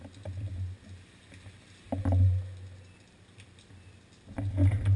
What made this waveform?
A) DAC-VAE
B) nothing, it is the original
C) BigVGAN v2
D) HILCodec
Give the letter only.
B